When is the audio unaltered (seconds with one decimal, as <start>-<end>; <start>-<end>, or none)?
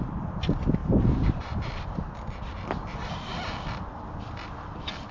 0.0-0.8; 3.9-5.1